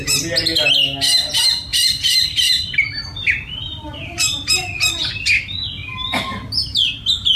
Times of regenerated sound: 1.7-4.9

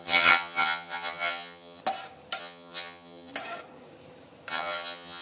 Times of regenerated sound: 0.0-1.8; 2.4-3.3; 4.5-5.2